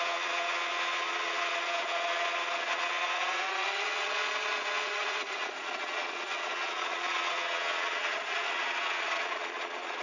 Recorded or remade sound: remade